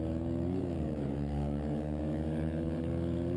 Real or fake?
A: fake